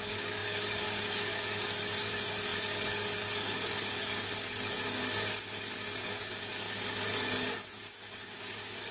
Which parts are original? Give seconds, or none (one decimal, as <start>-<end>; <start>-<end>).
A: none